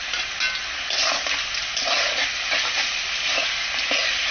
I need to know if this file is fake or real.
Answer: real